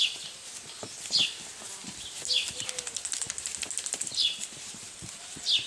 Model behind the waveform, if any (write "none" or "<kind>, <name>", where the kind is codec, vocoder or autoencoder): none